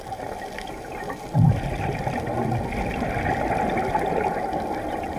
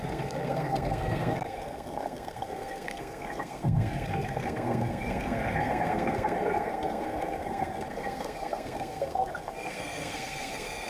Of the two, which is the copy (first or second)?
second